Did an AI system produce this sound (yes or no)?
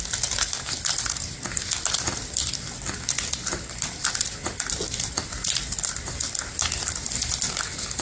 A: yes